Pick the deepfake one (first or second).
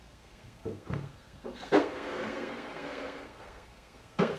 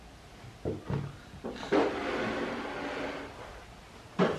first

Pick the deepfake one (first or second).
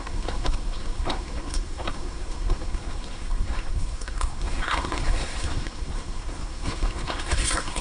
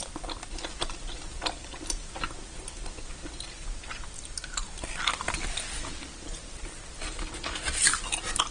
first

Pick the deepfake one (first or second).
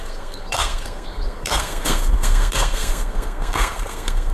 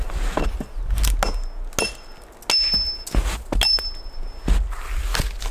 first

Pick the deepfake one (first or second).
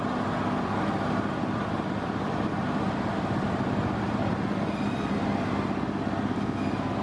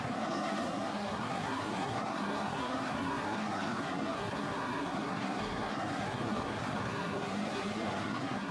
second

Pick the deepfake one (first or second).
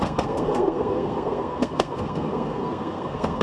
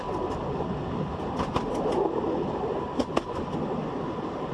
first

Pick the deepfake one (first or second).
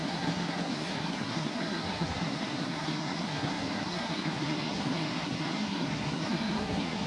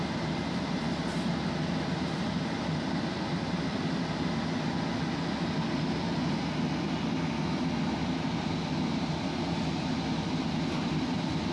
first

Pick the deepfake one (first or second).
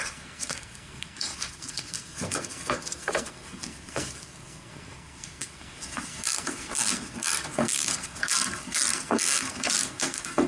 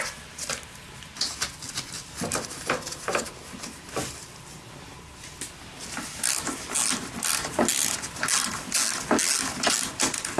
first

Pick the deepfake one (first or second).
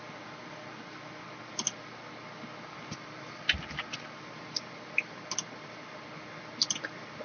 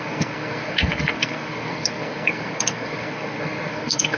second